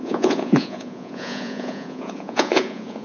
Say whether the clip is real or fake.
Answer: fake